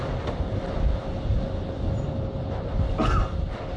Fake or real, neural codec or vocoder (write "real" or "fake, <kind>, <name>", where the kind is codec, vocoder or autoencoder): real